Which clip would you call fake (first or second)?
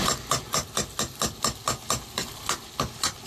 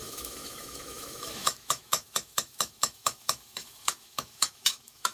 second